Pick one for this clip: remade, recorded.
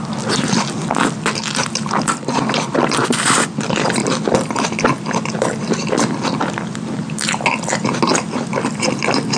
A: recorded